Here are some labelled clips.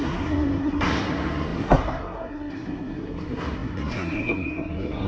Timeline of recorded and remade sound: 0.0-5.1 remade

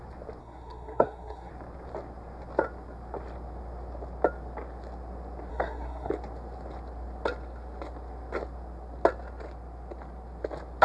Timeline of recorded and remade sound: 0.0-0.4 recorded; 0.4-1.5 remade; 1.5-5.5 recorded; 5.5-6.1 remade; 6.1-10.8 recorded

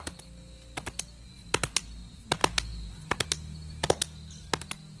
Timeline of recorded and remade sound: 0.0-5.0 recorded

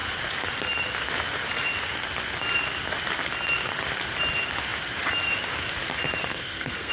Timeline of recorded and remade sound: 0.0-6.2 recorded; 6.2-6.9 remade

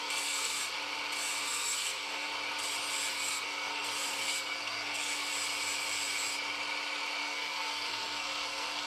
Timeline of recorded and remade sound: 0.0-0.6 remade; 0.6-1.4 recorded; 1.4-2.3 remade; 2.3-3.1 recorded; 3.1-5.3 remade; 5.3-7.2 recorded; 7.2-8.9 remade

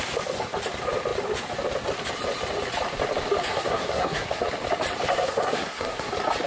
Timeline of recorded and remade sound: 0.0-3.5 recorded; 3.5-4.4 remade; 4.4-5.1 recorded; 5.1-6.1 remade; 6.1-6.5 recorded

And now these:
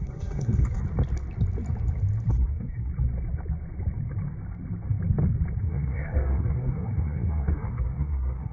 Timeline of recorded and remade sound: 0.0-0.8 remade; 0.8-2.3 recorded; 2.3-2.9 remade; 2.9-5.6 recorded; 5.6-8.5 remade

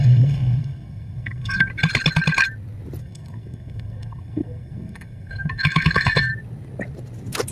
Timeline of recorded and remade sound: 0.0-1.7 remade; 1.7-3.0 recorded; 3.0-6.3 remade; 6.3-7.5 recorded